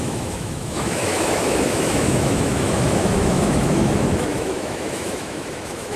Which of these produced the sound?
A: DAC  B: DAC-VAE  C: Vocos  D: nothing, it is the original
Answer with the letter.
B